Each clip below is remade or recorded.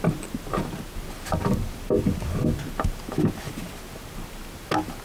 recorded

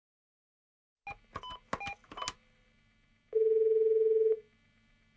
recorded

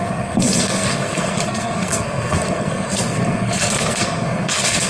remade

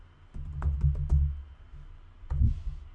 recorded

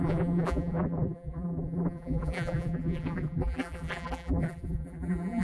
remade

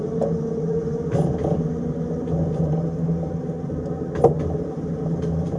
recorded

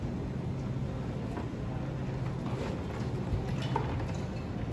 recorded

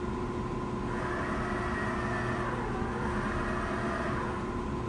recorded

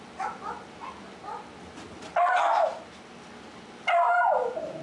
recorded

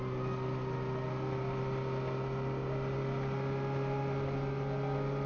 recorded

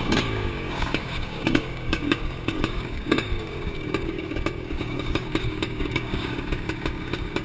remade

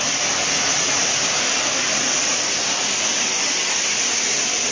recorded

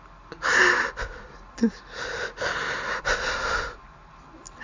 recorded